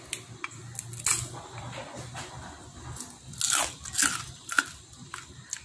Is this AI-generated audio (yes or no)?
no